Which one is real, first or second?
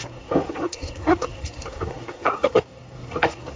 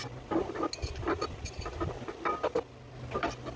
second